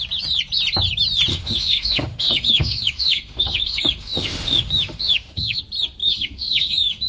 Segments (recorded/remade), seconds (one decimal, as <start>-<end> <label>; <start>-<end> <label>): 0.0-1.3 recorded; 1.3-5.6 remade; 5.6-6.0 recorded; 6.0-7.1 remade